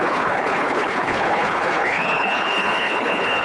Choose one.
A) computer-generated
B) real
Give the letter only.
A